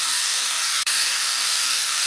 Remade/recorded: remade